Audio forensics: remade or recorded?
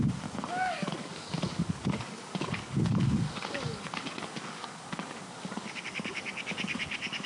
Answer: remade